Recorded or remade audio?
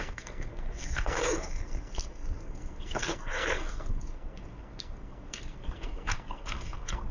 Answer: remade